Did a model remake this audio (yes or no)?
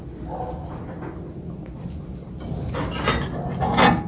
no